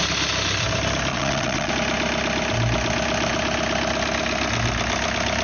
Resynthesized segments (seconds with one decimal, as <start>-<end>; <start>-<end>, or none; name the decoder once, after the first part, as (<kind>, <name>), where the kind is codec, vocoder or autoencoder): 1.1-1.7 (vocoder, WaveNeXt)